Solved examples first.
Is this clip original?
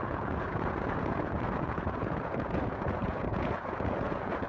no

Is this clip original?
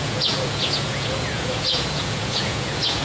no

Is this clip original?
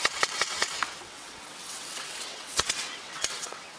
no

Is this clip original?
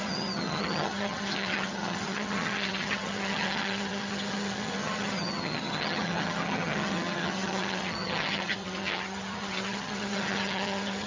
no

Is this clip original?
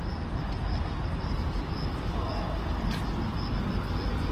yes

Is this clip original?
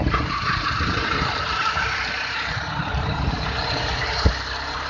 no